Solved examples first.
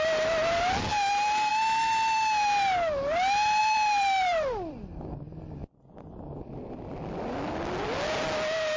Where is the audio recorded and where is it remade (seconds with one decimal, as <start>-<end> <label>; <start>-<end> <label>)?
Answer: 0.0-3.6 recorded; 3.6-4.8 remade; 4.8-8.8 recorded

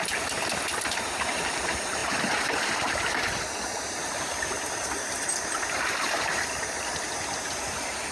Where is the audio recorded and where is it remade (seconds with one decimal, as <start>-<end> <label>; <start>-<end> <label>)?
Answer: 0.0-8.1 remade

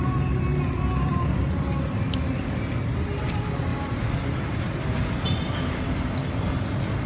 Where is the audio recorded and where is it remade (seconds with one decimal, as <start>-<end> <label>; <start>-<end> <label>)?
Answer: 0.0-3.7 recorded; 3.7-6.4 remade; 6.4-7.1 recorded

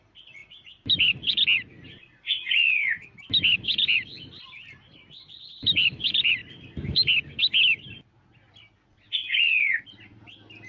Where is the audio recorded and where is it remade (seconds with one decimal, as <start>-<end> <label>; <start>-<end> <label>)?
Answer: 0.0-0.4 remade; 0.4-3.6 recorded; 3.6-6.4 remade; 6.4-10.7 recorded

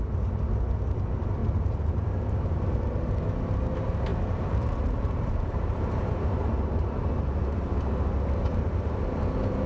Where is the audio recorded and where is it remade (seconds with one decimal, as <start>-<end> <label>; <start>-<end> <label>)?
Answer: 0.0-1.4 recorded; 1.4-3.2 remade; 3.2-4.1 recorded; 4.1-6.8 remade; 6.8-8.5 recorded; 8.5-9.0 remade; 9.0-9.7 recorded

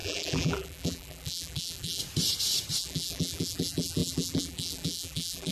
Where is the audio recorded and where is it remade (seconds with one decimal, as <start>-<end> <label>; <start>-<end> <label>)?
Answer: 0.0-2.0 remade; 2.0-2.8 recorded; 2.8-5.5 remade

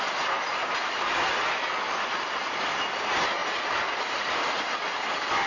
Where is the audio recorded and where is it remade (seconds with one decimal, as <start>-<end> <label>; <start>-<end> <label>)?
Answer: 0.0-0.5 recorded; 0.5-1.2 remade; 1.2-3.4 recorded; 3.4-4.5 remade; 4.5-5.5 recorded